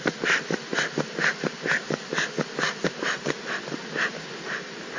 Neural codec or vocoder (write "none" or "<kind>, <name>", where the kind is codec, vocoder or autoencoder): none